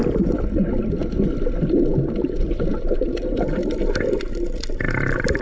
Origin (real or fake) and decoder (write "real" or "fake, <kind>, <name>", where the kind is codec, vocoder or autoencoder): real